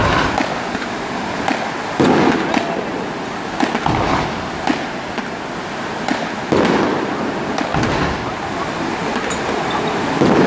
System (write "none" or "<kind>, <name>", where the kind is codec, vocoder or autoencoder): none